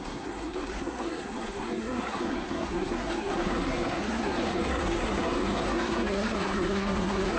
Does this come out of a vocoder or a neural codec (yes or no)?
yes